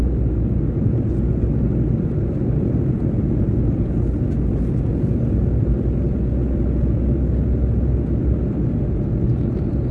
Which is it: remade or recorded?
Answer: recorded